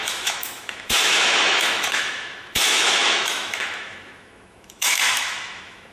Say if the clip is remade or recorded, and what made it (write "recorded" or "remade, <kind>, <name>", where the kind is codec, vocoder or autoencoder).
remade, autoencoder, DAC-VAE